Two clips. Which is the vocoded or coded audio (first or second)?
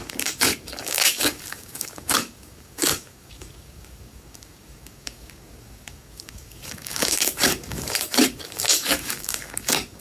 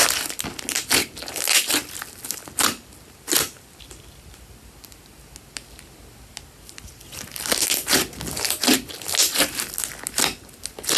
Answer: first